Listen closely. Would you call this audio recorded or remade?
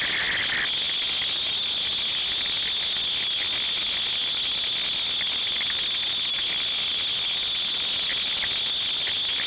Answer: recorded